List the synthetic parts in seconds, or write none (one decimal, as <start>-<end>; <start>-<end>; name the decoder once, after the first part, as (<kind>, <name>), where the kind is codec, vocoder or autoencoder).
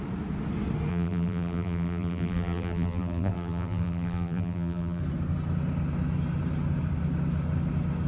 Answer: 0.9-5.0 (vocoder, BigVGAN v2)